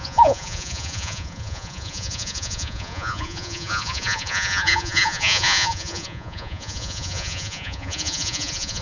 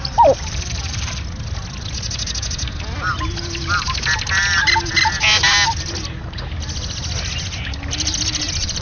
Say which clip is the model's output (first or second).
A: first